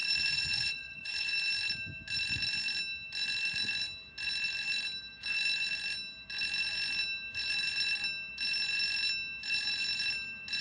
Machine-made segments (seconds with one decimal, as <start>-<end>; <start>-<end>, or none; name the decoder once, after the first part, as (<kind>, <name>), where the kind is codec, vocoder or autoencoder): 0.0-1.3 (vocoder, Vocos)